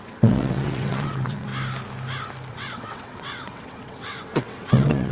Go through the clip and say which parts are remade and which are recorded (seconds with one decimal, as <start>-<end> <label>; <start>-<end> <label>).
0.0-1.5 remade; 1.5-2.5 recorded; 2.5-5.1 remade